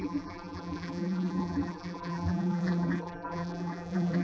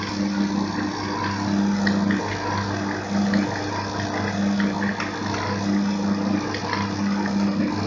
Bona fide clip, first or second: second